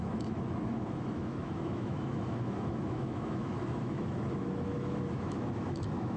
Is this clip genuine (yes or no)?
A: no